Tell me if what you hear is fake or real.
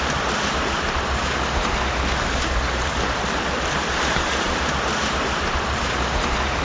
fake